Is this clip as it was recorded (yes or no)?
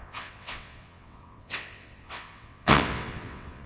no